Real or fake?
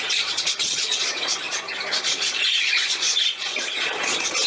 fake